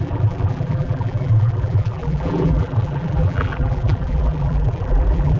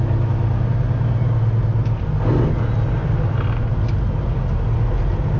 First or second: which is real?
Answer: second